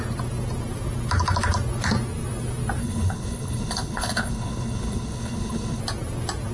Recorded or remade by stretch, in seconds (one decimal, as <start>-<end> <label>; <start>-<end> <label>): 0.0-2.8 recorded; 2.8-5.8 remade; 5.8-6.5 recorded